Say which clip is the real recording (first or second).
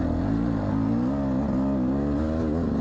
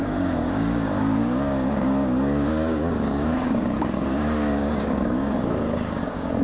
first